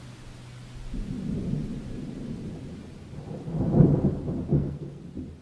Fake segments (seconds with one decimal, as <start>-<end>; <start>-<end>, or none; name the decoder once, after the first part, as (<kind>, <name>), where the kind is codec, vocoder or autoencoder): 4.5-5.0 (codec, SNAC)